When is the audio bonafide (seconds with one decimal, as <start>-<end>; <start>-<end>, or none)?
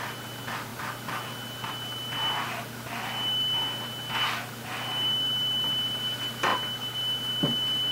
0.0-7.9